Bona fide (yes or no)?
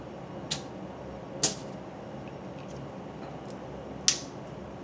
yes